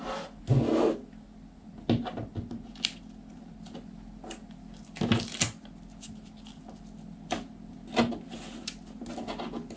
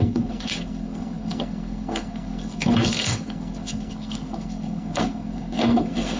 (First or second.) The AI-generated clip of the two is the second